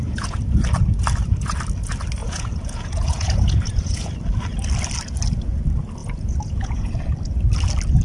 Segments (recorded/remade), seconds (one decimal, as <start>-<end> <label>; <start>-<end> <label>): 0.0-0.6 remade; 0.6-2.2 recorded; 2.2-4.1 remade; 4.1-6.0 recorded; 6.0-6.9 remade; 6.9-8.0 recorded